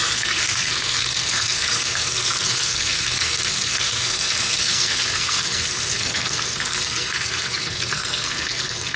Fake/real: fake